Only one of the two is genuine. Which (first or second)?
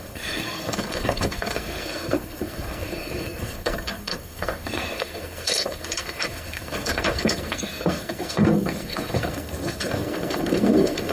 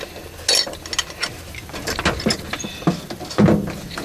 second